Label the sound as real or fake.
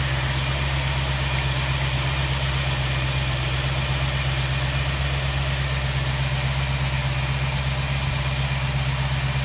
real